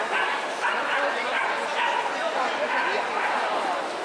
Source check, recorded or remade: recorded